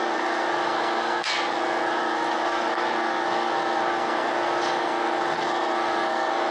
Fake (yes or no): yes